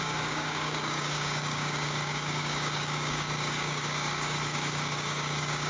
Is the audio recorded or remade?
remade